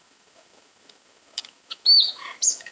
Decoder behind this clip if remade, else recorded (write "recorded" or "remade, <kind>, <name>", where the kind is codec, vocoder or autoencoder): remade, autoencoder, DAC-VAE